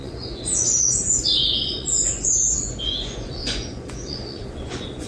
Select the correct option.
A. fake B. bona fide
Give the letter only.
A